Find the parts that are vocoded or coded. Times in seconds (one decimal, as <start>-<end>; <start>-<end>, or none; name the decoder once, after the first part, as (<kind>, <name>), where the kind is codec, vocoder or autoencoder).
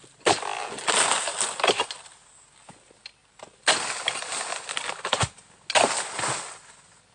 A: none